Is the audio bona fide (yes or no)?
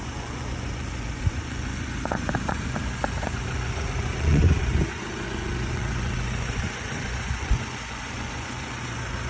no